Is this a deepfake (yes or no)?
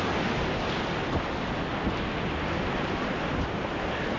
no